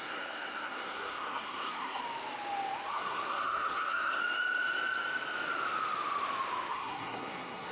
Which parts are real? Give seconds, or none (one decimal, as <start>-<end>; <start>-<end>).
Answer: 2.0-2.9; 4.2-6.7